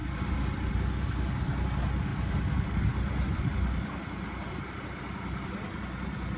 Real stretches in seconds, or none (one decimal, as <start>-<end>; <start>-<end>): 0.0-6.4